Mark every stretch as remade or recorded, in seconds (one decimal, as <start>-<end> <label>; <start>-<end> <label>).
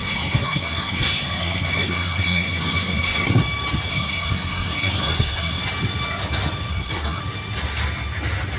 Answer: 0.0-3.4 remade; 3.4-3.9 recorded; 3.9-5.6 remade; 5.6-6.7 recorded; 6.7-7.2 remade; 7.2-8.6 recorded